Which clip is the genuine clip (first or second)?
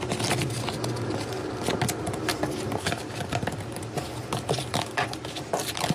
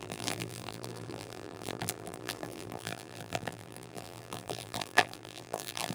first